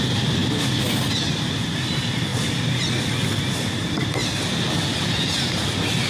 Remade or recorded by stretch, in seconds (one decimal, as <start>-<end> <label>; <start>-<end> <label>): 0.0-6.1 recorded